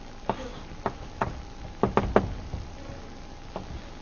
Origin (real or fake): real